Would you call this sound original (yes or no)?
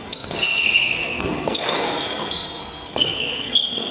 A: no